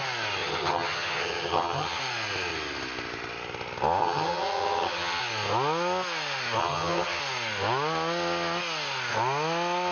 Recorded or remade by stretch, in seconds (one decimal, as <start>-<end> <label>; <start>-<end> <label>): 0.0-0.4 recorded; 0.4-2.0 remade; 2.0-4.0 recorded; 4.0-5.2 remade; 5.2-6.6 recorded; 6.6-7.2 remade; 7.2-9.9 recorded